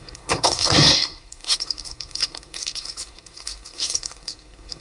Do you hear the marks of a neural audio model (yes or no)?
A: yes